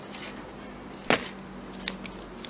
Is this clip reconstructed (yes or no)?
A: no